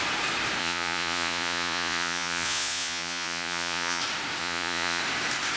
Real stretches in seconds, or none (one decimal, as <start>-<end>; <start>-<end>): 0.0-0.6; 4.0-4.4; 5.0-5.6